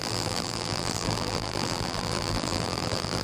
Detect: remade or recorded remade